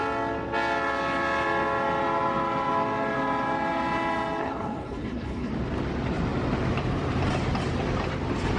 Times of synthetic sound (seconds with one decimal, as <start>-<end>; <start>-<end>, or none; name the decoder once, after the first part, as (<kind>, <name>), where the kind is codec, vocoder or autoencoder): 4.4-5.5 (codec, HILCodec)